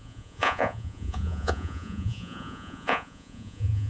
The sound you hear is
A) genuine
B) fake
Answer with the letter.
B